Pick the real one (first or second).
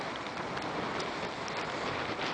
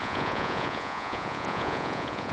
first